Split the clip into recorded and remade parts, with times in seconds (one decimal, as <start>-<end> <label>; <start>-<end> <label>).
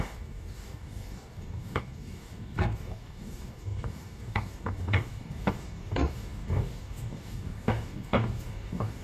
0.0-9.0 remade